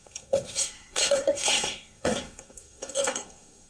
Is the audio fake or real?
fake